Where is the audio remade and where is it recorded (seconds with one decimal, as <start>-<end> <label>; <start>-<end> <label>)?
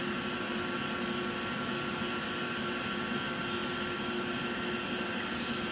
0.0-5.7 recorded